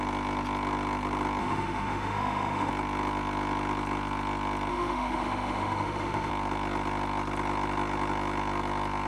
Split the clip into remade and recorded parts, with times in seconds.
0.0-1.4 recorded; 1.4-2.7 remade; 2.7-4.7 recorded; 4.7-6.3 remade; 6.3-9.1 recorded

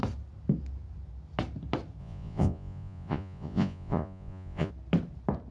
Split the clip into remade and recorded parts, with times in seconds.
0.0-2.0 recorded; 2.0-4.7 remade; 4.7-5.5 recorded

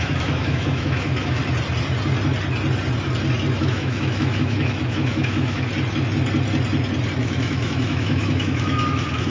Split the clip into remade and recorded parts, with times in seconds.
0.0-1.4 remade; 1.4-3.6 recorded; 3.6-5.7 remade; 5.7-7.2 recorded; 7.2-9.3 remade

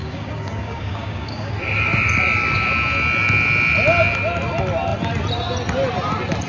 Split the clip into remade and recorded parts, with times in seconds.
0.0-1.5 remade; 1.5-6.5 recorded